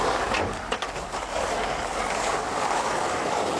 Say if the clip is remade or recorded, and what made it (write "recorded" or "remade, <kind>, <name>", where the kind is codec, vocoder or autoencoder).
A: remade, codec, DAC